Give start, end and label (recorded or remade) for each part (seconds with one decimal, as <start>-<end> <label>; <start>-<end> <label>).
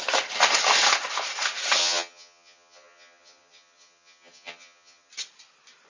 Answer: 0.0-1.8 recorded; 1.8-5.1 remade; 5.1-5.9 recorded